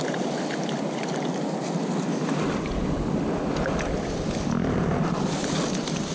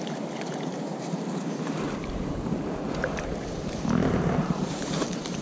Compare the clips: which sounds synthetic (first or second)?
second